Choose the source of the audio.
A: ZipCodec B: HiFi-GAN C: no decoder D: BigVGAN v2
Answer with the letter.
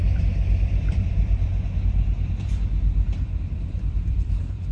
D